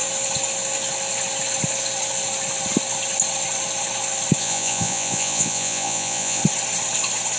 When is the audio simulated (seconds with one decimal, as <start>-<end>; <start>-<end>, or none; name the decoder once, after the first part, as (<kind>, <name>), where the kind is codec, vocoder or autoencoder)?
4.4-6.4 (vocoder, Vocos)